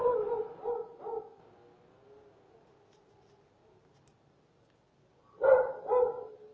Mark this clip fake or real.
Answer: real